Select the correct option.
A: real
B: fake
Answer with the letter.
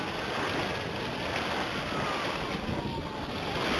A